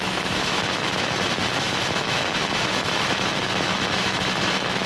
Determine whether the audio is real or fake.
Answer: fake